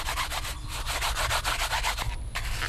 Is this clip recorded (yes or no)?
yes